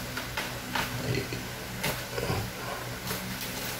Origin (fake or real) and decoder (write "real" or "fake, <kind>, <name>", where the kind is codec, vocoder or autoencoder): real